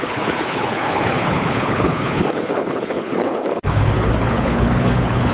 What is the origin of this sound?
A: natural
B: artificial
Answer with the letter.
B